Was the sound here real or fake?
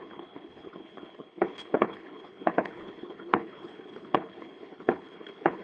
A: fake